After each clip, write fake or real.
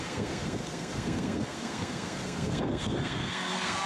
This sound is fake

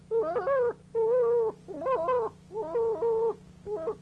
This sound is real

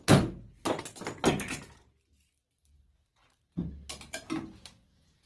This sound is real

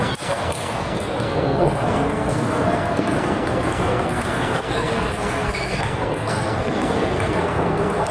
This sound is fake